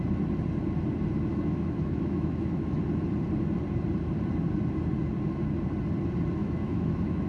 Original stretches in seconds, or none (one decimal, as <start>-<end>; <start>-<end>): 0.0-1.3; 2.8-6.4